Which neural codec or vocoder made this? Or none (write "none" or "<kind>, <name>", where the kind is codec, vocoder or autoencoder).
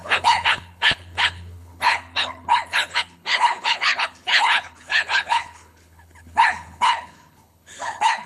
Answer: codec, HILCodec